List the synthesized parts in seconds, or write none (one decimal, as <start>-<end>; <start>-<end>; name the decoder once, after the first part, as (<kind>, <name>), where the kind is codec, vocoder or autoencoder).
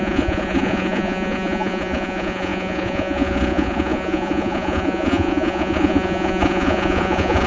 0.0-7.5 (vocoder, Vocos)